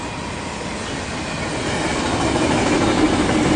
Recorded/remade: recorded